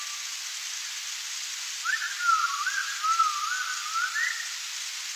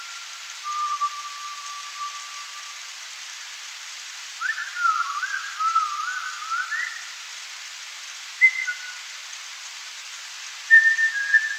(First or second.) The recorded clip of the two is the first